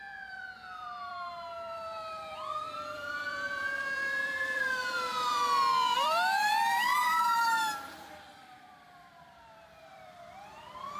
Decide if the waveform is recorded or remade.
remade